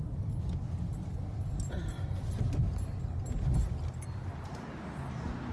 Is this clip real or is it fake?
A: real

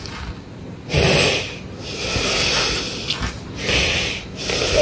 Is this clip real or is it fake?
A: real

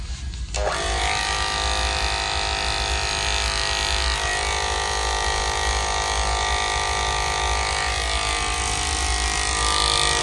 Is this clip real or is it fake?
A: real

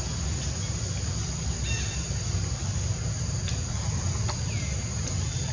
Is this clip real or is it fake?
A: real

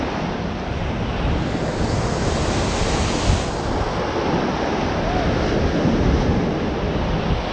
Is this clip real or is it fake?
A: real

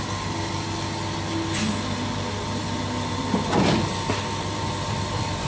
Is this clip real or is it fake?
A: real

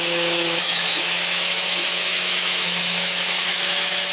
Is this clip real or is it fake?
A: fake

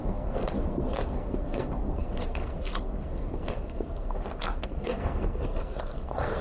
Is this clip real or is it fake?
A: fake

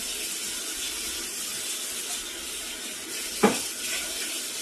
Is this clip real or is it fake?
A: real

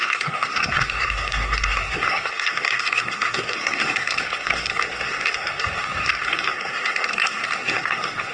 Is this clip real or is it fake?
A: fake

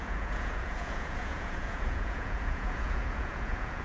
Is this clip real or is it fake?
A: fake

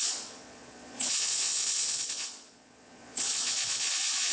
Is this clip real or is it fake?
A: fake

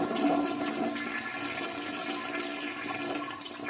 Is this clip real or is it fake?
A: real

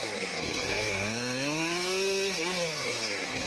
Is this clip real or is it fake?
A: fake